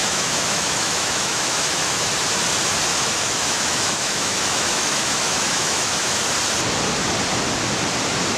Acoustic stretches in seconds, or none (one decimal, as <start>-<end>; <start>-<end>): 2.1-2.9; 6.2-8.4